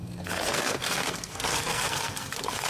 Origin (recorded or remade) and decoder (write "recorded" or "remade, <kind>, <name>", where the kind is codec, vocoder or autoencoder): remade, codec, SNAC